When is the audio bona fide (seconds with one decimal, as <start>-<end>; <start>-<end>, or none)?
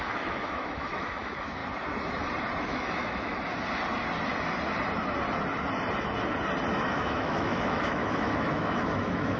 1.6-2.6; 3.3-6.7